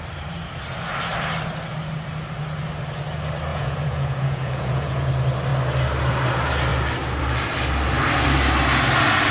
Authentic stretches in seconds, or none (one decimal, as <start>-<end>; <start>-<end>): 0.0-3.5; 5.1-9.3